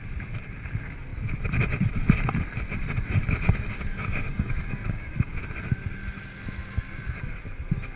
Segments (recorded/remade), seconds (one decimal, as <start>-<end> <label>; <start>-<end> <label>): 0.0-3.2 recorded; 3.2-5.3 remade; 5.3-8.0 recorded